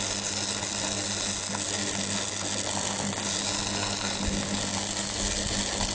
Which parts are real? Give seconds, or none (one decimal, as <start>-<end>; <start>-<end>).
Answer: 0.0-5.9